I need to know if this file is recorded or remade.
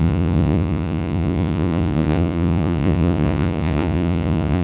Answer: remade